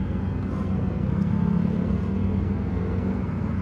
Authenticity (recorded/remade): remade